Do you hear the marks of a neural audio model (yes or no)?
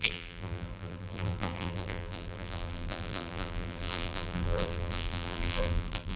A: yes